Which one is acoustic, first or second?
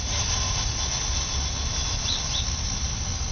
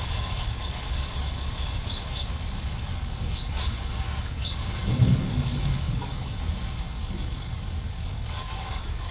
first